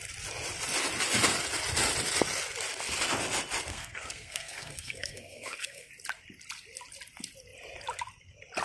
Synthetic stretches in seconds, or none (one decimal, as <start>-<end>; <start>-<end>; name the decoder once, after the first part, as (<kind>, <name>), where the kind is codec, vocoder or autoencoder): 3.7-5.9 (codec, SNAC)